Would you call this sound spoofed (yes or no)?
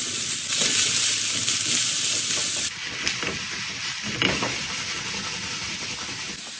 no